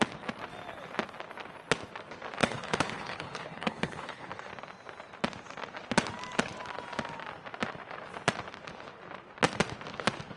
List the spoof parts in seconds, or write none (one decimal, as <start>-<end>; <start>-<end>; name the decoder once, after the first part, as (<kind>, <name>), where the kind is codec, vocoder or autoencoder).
2.4-4.5 (codec, HILCodec)